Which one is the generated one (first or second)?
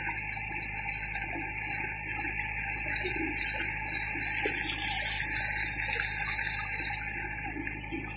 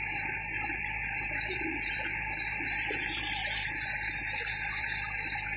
second